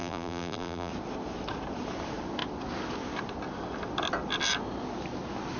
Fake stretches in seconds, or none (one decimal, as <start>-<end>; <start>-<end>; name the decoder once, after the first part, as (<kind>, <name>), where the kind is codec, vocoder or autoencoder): 0.0-0.9 (vocoder, BigVGAN v2)